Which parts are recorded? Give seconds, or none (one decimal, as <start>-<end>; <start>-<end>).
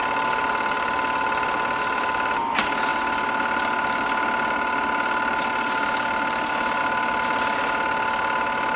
0.0-8.8